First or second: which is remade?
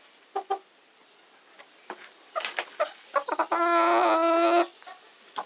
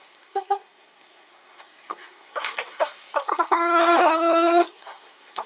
second